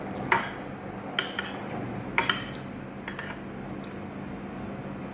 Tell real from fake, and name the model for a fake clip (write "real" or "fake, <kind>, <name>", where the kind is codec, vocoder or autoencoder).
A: real